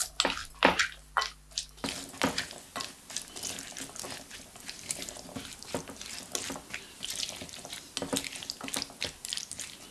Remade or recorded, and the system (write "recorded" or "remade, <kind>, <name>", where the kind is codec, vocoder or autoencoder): recorded